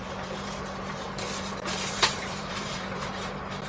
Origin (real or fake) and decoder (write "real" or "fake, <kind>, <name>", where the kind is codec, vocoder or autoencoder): fake, vocoder, BigVGAN v2